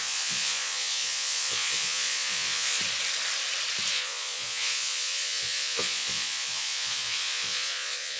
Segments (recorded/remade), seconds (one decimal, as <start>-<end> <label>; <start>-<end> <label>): 0.0-2.8 remade; 2.8-3.9 recorded; 3.9-8.2 remade